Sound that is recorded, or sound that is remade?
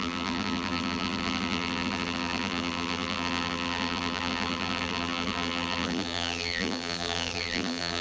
remade